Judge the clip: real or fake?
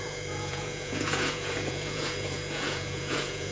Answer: fake